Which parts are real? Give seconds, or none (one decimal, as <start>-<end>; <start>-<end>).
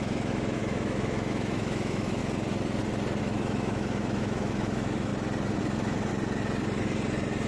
2.2-3.2; 5.1-5.6; 6.1-7.5